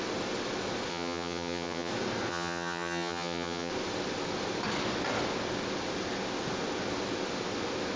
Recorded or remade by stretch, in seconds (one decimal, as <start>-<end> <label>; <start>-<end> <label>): 0.0-0.9 recorded; 0.9-1.9 remade; 1.9-2.3 recorded; 2.3-3.7 remade; 3.7-8.0 recorded